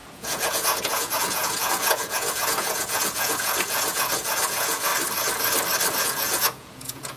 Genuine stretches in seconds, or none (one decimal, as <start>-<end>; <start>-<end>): 4.9-6.0